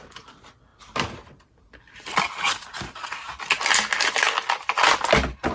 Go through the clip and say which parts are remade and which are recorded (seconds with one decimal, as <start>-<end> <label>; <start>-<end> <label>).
0.0-5.5 recorded